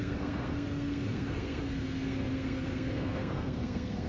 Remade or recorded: remade